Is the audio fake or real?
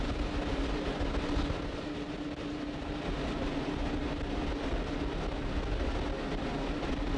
real